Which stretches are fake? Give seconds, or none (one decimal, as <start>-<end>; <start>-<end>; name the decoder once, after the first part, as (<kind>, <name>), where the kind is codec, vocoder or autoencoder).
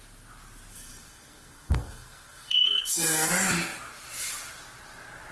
0.7-3.3 (codec, SNAC)